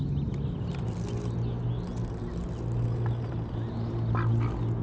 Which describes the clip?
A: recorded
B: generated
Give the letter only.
A